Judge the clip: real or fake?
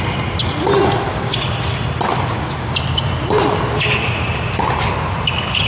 real